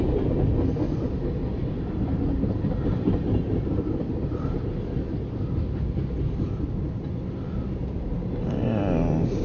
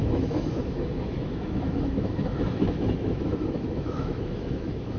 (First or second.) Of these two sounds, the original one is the first